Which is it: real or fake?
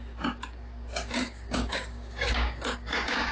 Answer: fake